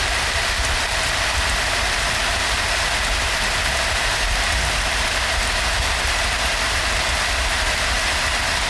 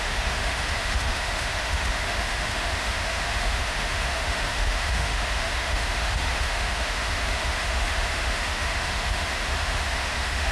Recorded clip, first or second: first